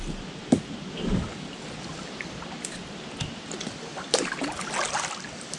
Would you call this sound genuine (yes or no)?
yes